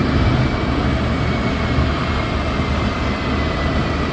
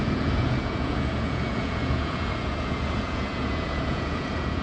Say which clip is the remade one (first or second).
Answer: second